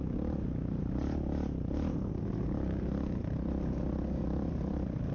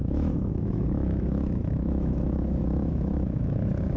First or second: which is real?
first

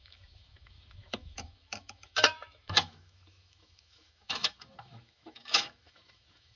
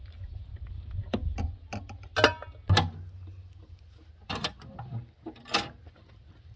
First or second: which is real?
second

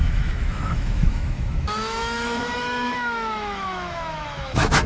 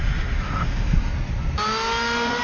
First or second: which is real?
second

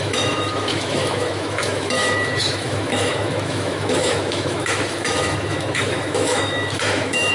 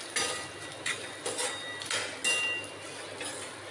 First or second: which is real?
second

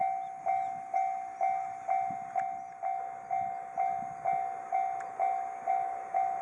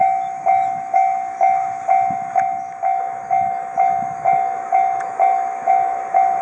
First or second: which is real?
first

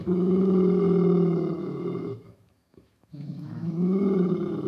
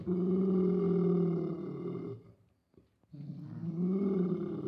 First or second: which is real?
second